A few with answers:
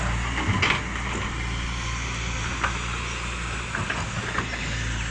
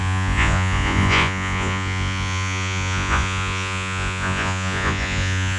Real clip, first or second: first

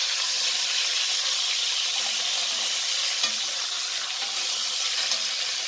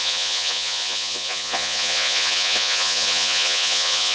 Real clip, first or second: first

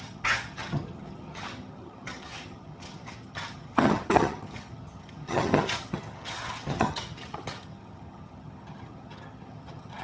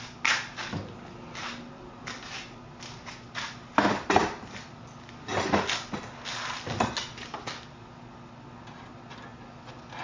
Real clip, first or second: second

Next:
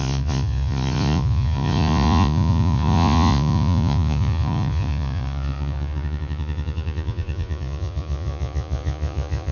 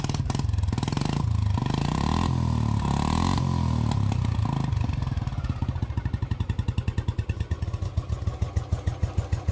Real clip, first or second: second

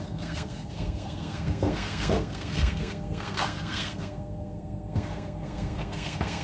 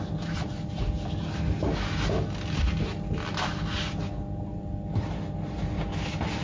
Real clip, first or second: second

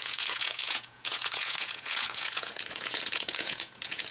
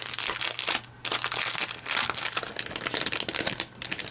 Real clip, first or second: second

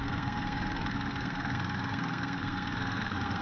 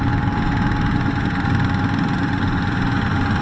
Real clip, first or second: second